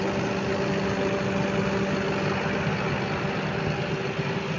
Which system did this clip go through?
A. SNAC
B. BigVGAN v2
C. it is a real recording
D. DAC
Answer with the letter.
C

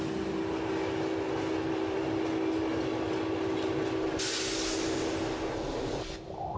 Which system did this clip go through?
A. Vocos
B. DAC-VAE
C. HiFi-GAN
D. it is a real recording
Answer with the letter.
D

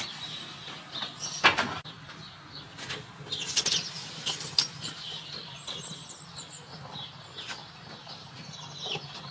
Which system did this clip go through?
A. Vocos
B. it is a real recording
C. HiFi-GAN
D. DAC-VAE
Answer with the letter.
B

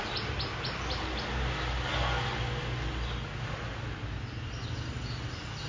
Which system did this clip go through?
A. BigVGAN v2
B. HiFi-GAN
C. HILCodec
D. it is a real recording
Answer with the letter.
D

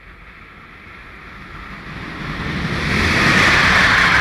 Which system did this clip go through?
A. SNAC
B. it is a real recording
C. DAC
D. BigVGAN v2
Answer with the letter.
B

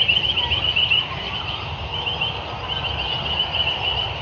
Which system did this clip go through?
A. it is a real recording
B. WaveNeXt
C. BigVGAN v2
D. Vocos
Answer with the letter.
A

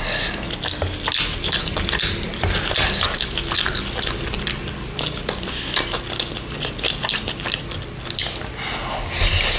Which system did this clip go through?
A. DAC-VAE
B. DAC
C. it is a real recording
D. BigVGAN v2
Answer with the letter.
C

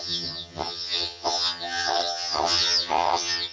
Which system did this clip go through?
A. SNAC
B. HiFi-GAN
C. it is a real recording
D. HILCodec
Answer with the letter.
B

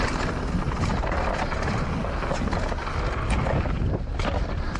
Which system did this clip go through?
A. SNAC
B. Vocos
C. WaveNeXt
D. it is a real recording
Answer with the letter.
D